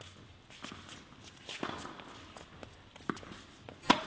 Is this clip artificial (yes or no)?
no